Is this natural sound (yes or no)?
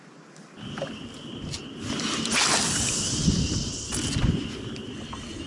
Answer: yes